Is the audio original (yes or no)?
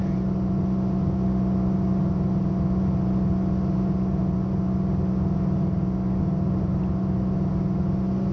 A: yes